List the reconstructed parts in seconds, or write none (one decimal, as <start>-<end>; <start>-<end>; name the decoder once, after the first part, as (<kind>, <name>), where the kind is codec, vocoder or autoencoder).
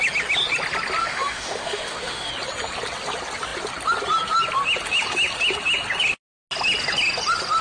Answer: 1.0-2.3 (autoencoder, DAC-VAE)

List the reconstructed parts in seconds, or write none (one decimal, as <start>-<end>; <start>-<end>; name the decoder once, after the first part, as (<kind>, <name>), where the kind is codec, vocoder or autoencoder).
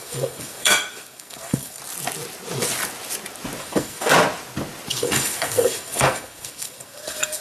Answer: 0.0-1.8 (codec, SNAC); 3.6-4.1; 4.9-7.4